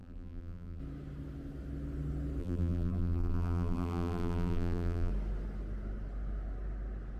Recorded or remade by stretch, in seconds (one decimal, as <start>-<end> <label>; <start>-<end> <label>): 0.0-0.8 remade; 0.8-2.4 recorded; 2.4-5.1 remade; 5.1-7.2 recorded